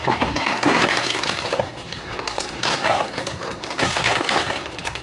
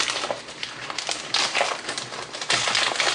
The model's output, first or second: first